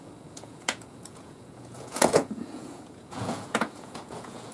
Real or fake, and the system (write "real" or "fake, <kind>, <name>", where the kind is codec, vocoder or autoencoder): fake, vocoder, Vocos